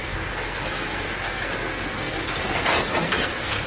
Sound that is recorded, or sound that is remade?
remade